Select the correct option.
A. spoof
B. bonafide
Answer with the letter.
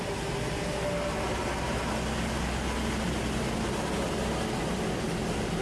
B